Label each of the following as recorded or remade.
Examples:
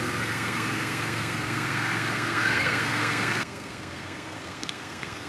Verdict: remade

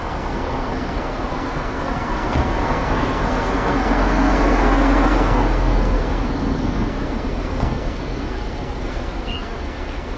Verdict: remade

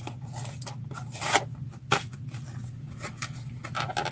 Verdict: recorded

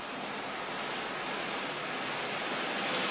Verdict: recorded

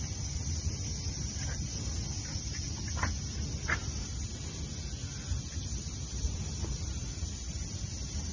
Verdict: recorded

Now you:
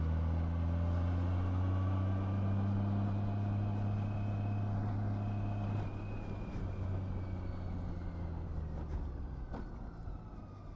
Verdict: recorded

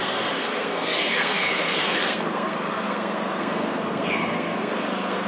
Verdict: remade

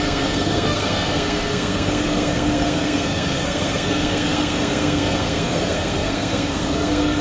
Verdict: remade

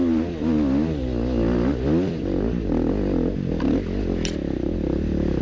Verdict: recorded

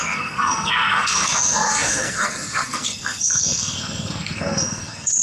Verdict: remade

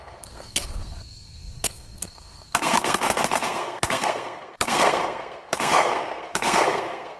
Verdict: remade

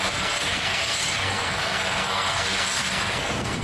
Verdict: remade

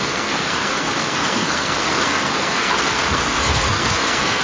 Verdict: remade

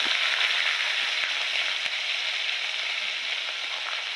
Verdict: recorded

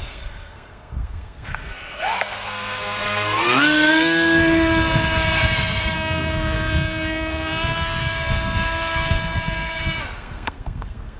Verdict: remade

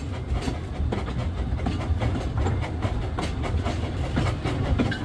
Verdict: recorded